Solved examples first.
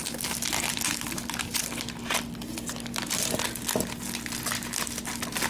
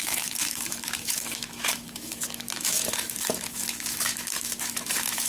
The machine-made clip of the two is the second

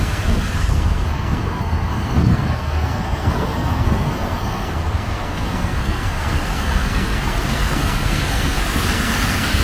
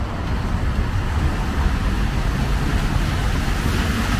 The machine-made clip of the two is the first